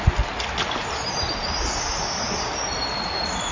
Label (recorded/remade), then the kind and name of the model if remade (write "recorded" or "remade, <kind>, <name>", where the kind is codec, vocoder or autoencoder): recorded